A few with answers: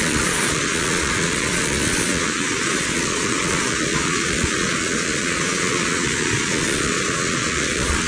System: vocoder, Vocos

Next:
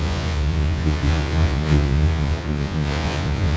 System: vocoder, Vocos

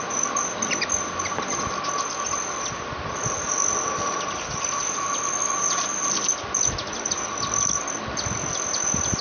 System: none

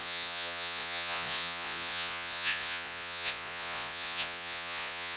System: vocoder, Vocos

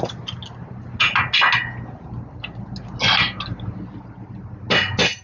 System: none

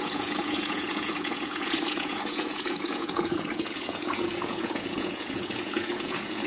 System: vocoder, Vocos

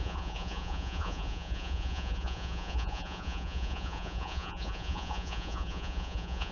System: vocoder, Vocos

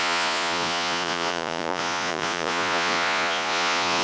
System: vocoder, Vocos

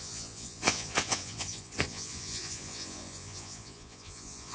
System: vocoder, Vocos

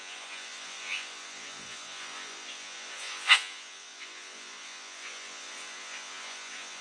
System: vocoder, Vocos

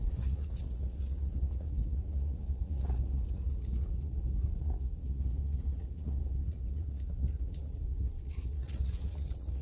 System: vocoder, Vocos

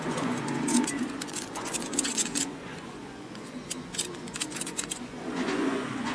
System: vocoder, Vocos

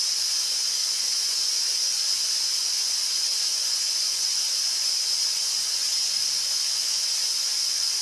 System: vocoder, Vocos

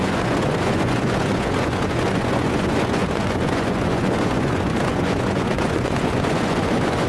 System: vocoder, Vocos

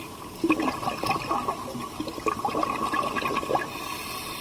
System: none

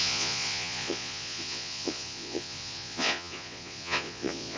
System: vocoder, Vocos